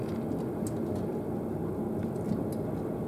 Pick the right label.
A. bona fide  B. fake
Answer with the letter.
A